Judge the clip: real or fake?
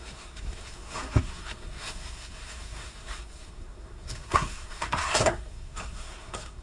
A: fake